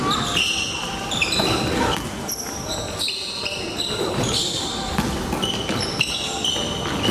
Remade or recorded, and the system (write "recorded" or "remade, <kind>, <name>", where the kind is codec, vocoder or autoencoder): recorded